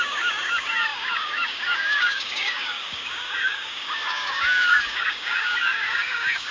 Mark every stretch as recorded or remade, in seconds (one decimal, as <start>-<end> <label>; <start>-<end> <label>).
0.0-6.5 remade